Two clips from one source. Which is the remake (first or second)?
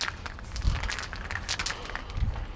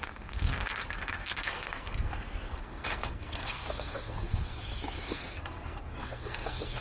second